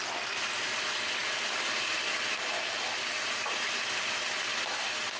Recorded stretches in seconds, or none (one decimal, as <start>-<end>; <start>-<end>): 0.0-5.2